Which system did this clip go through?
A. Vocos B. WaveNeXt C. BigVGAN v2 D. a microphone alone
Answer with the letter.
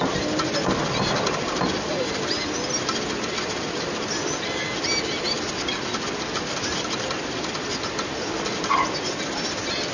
D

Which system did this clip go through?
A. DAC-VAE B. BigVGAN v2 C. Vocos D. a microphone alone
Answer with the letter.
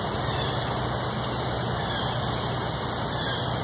D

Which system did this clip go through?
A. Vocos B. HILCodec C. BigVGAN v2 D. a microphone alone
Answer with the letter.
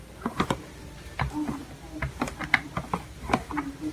D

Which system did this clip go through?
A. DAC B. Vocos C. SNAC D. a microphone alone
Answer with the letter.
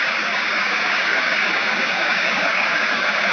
A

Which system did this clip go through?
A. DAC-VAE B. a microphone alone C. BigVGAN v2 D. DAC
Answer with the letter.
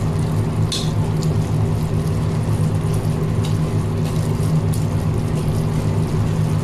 B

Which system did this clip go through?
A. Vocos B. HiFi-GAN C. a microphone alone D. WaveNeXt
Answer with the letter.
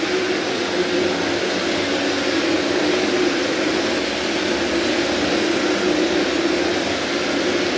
C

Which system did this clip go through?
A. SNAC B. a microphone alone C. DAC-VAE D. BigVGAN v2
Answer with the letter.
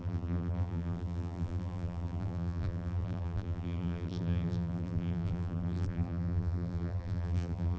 D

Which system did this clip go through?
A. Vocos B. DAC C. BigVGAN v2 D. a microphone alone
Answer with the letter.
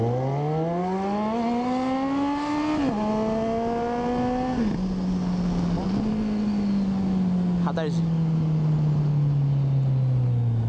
D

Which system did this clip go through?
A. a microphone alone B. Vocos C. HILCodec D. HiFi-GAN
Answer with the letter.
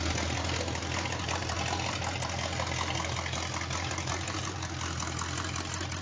A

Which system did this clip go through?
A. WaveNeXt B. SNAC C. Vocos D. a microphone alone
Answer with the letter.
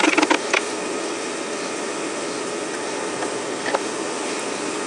D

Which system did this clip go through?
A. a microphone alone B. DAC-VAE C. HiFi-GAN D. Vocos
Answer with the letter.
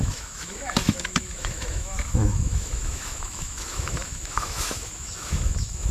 B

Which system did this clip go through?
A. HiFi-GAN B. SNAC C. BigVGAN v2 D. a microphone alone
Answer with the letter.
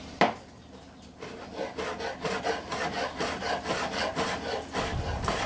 D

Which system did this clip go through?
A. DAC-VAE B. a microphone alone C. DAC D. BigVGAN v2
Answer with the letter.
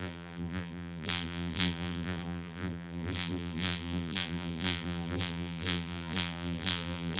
D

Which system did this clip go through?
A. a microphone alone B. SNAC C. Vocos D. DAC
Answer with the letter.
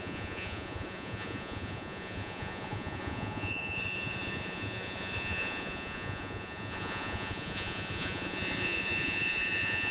C